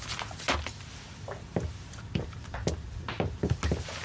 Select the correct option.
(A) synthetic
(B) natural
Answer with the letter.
B